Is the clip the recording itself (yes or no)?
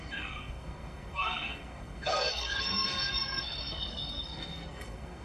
no